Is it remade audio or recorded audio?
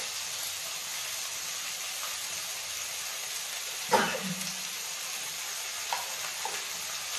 recorded